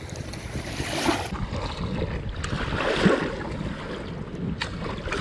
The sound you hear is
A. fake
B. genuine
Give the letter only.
B